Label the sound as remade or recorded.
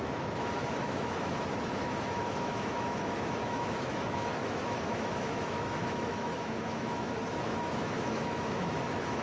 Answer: remade